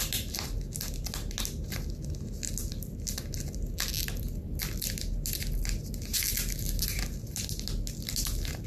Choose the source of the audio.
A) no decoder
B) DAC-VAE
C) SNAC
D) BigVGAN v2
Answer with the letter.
A